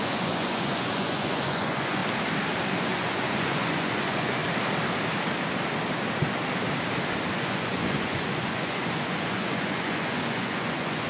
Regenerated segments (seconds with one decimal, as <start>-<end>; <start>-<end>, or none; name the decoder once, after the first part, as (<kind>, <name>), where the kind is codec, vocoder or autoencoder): 0.0-2.0 (vocoder, Vocos); 2.8-4.4; 7.3-11.1